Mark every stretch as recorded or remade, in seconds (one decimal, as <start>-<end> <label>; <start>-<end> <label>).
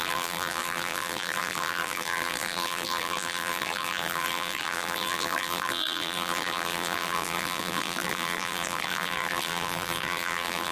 0.0-10.7 remade